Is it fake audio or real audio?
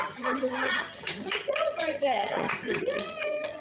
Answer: fake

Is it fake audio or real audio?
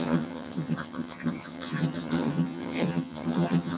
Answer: fake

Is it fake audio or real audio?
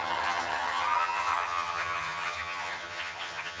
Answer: fake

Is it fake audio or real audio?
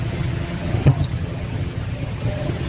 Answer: fake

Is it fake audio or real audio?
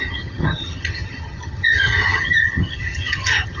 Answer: fake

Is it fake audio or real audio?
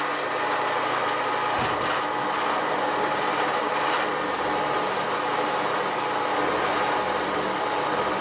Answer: real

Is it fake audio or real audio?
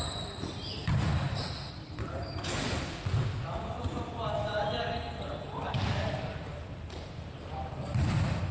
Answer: real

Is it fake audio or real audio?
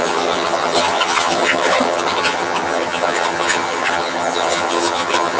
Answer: fake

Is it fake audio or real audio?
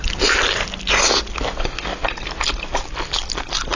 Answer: real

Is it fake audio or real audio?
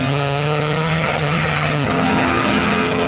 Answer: fake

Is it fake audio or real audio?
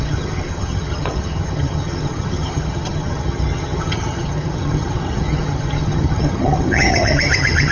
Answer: fake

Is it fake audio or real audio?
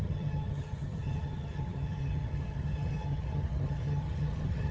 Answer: fake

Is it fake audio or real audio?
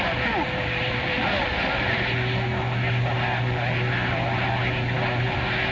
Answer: real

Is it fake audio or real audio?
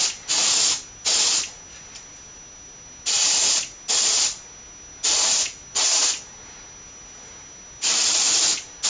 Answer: real